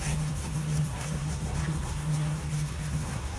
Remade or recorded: remade